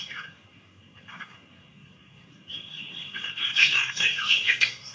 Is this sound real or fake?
fake